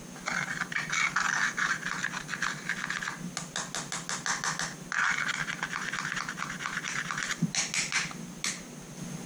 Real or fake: real